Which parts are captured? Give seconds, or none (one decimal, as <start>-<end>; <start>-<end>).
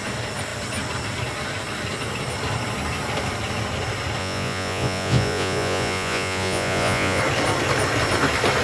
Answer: 0.0-4.2; 7.2-8.6